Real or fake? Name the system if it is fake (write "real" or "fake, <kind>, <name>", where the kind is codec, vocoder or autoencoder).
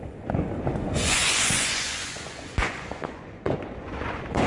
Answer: fake, vocoder, Vocos